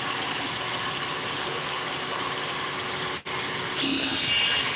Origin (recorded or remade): recorded